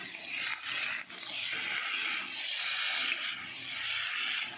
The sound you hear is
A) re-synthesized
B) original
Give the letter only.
B